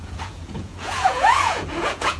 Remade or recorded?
remade